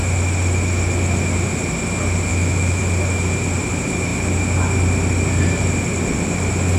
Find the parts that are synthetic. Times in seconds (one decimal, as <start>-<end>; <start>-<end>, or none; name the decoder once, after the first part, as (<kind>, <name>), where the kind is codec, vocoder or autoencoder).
2.3-2.8 (autoencoder, DAC-VAE)